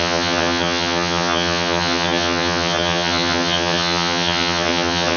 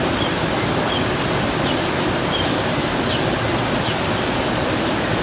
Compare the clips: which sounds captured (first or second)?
second